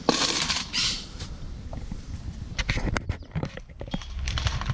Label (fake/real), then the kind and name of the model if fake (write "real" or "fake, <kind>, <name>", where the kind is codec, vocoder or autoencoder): fake, vocoder, BigVGAN v2